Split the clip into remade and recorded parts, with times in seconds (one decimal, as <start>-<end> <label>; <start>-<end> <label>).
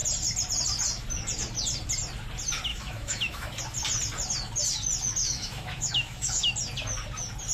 0.0-2.7 recorded; 2.7-3.6 remade; 3.6-5.2 recorded; 5.2-6.5 remade; 6.5-7.5 recorded